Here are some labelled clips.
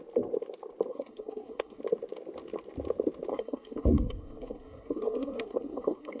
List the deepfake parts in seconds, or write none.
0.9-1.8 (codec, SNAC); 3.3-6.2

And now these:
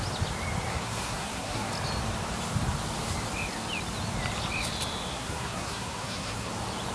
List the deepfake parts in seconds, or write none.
0.7-1.7 (codec, SNAC); 5.1-6.5

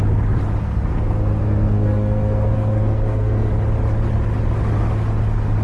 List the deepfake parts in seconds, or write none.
0.6-3.5 (codec, SNAC)

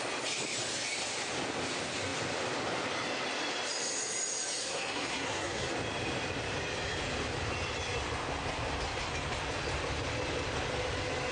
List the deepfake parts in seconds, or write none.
4.6-5.7 (codec, SNAC)